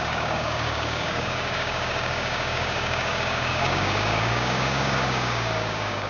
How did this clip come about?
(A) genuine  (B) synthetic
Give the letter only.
B